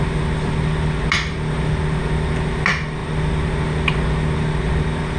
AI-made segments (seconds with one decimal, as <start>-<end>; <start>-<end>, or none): none